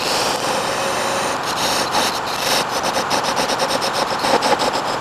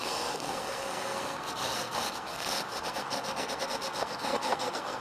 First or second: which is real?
first